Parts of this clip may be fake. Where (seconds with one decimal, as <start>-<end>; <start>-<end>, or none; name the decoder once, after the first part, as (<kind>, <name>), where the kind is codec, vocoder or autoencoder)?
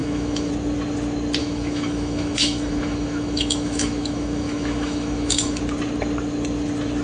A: 0.0-0.5 (autoencoder, DAC-VAE); 1.4-5.6